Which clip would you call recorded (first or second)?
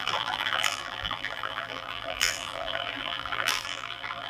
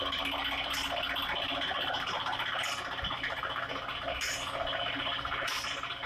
second